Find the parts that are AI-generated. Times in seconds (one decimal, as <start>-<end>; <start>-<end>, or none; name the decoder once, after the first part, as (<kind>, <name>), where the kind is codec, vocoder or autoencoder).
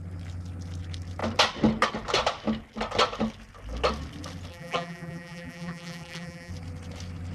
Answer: 4.5-6.5 (vocoder, BigVGAN v2)